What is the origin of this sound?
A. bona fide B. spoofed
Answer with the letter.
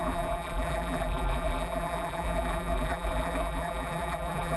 B